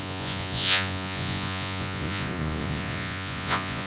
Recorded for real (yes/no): no